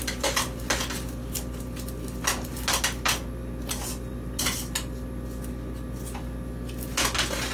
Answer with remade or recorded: recorded